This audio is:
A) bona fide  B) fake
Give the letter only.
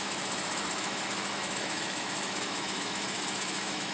B